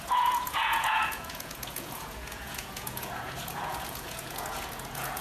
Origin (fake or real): fake